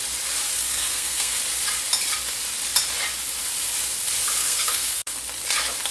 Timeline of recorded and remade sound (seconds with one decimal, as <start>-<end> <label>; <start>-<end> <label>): 0.0-0.6 recorded; 0.6-1.4 remade; 1.4-4.4 recorded; 4.4-5.2 remade; 5.2-5.9 recorded

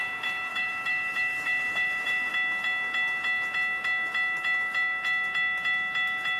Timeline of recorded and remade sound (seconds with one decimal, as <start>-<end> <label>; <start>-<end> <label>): 0.0-0.5 recorded; 0.5-2.3 remade; 2.3-6.4 recorded

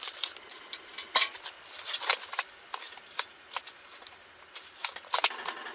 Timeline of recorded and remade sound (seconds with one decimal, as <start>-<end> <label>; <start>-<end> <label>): 0.0-5.7 recorded

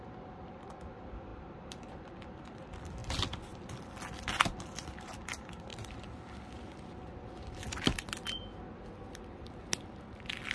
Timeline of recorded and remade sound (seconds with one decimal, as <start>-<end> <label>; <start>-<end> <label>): 0.0-10.5 recorded